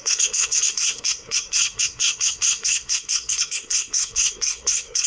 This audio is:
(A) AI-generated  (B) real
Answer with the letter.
A